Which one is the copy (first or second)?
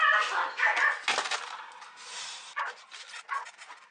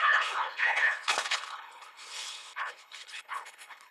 second